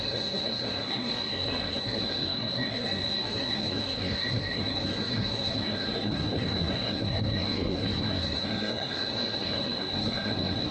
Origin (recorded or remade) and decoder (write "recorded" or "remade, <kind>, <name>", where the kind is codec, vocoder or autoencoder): remade, codec, SNAC